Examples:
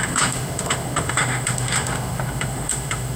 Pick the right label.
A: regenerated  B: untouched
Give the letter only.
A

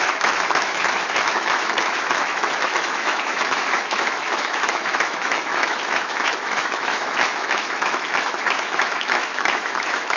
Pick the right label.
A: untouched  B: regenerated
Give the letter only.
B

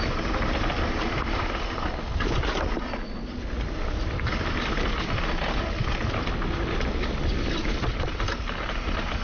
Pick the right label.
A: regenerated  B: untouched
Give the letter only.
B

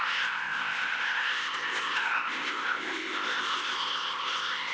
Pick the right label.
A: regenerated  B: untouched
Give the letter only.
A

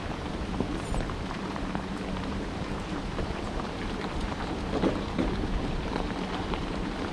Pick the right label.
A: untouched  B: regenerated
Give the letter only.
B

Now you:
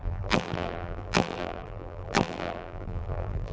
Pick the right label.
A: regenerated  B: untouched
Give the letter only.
A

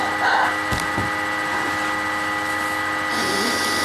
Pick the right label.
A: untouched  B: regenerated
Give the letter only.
A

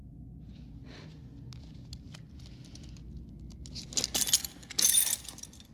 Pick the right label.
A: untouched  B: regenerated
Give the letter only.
A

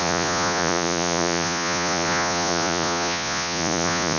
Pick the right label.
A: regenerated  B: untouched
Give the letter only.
A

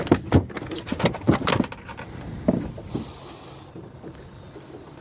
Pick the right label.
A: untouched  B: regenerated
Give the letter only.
A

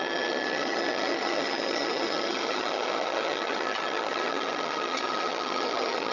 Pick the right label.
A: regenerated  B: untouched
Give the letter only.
A